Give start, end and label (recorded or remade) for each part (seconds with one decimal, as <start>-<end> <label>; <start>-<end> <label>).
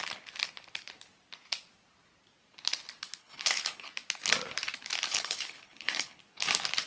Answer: 0.0-3.2 recorded; 3.2-3.9 remade; 3.9-5.1 recorded; 5.1-6.2 remade; 6.2-6.9 recorded